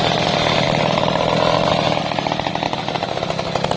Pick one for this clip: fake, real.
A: real